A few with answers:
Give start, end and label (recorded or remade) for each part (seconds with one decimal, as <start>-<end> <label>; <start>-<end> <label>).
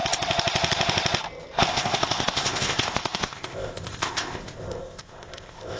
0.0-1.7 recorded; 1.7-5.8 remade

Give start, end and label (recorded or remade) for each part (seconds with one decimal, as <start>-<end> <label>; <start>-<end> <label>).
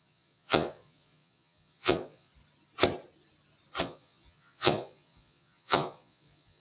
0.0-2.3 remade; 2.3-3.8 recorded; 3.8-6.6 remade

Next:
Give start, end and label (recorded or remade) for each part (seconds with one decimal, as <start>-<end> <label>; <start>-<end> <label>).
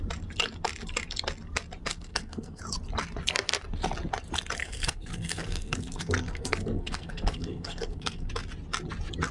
0.0-1.9 recorded; 1.9-2.6 remade; 2.6-4.6 recorded; 4.6-8.3 remade; 8.3-9.3 recorded